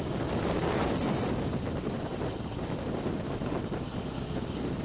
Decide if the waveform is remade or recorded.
recorded